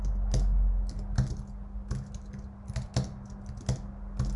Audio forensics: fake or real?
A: real